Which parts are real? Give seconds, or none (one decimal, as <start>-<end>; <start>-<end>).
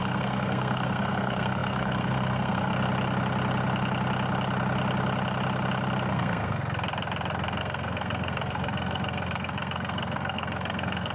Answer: 2.7-6.1; 6.6-7.6